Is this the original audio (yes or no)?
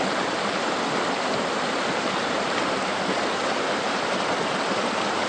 no